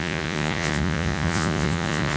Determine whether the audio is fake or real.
fake